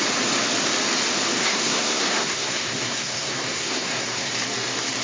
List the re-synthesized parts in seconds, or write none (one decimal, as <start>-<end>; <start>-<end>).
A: 1.4-4.3